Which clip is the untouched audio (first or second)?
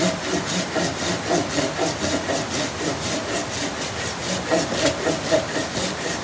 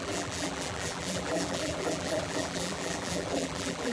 first